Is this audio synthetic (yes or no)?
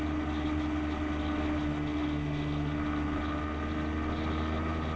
no